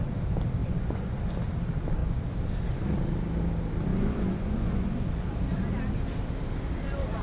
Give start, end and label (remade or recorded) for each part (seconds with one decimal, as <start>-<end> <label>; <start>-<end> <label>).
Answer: 0.0-0.6 recorded; 0.6-1.2 remade; 1.2-3.9 recorded; 3.9-5.1 remade; 5.1-7.2 recorded